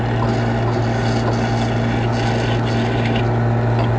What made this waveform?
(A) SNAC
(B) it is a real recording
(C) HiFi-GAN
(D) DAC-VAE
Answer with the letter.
B